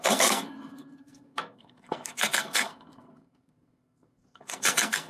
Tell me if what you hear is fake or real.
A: fake